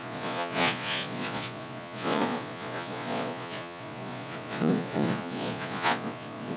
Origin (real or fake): fake